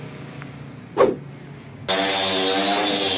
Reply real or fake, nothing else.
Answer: real